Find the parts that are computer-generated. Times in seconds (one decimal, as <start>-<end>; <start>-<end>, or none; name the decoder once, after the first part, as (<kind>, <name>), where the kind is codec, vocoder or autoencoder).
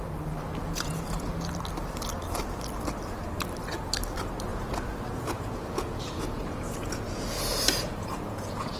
0.6-1.3 (vocoder, Vocos); 4.5-8.8